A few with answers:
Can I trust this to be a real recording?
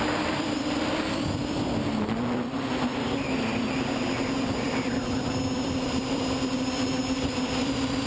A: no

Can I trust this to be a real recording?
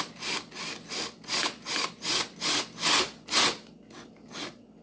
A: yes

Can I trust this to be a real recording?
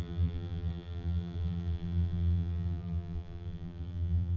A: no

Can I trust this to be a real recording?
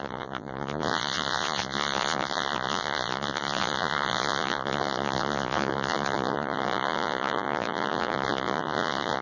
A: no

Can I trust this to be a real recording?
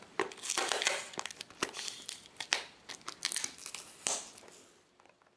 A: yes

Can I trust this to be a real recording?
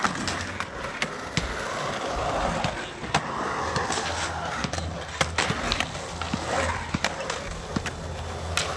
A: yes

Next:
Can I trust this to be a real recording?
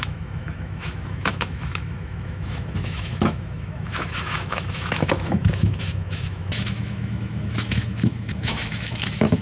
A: no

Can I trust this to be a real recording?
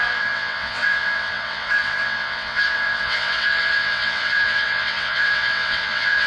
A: no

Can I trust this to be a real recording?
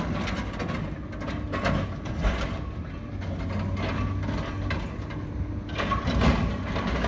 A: yes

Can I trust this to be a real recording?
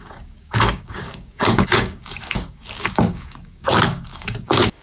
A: no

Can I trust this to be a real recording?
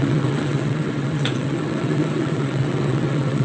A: no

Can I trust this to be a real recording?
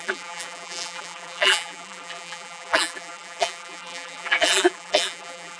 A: no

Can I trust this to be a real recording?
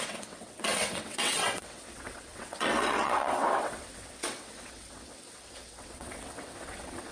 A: no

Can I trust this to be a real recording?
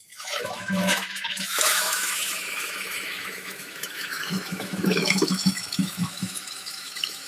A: no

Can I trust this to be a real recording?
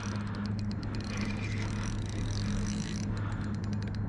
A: yes